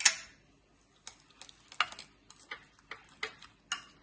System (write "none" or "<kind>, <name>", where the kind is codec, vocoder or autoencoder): none